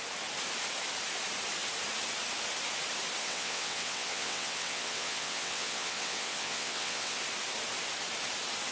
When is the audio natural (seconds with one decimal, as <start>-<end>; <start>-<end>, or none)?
0.0-3.2; 7.2-8.7